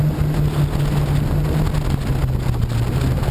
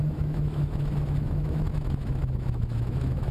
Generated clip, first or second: second